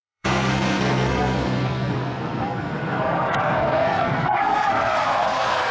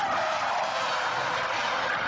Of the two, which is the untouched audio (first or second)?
second